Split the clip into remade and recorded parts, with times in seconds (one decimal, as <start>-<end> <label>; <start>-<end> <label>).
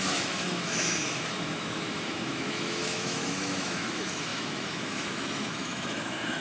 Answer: 0.0-6.4 remade